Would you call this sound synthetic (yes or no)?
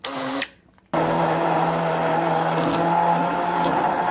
no